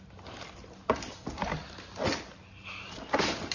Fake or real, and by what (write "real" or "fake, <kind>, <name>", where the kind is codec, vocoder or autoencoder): real